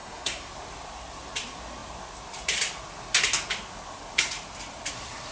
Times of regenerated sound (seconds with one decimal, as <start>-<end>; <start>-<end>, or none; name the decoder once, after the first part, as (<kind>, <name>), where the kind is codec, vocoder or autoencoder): 0.0-0.5 (codec, SNAC)